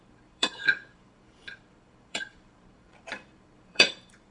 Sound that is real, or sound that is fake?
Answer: fake